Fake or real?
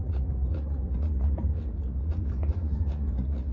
fake